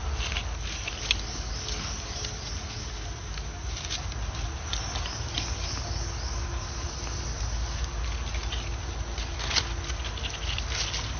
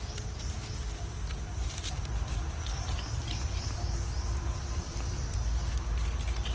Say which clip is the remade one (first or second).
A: second